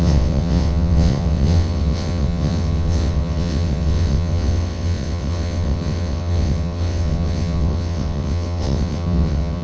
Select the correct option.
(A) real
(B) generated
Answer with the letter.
B